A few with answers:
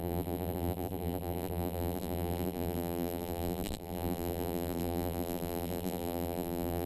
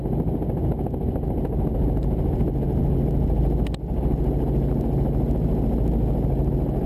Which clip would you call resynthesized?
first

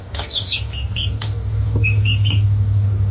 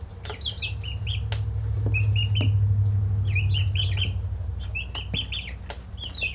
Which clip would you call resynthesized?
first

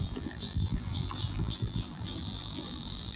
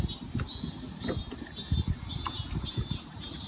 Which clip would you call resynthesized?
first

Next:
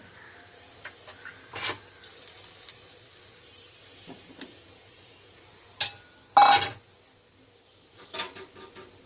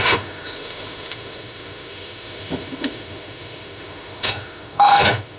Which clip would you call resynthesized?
second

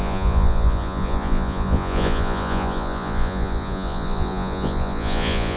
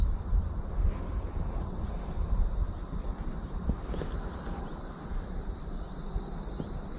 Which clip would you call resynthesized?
first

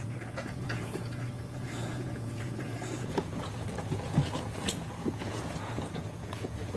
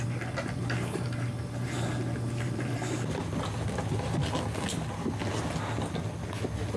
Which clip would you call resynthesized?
first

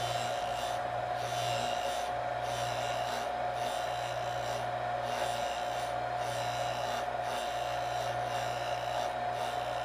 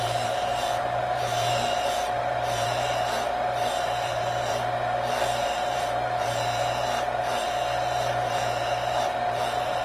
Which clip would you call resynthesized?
second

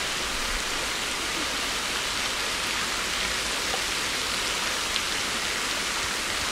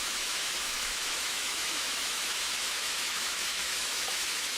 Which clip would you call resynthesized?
second